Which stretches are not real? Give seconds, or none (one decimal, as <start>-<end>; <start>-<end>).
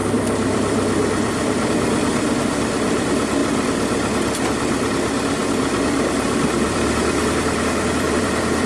0.0-1.7; 3.4-8.7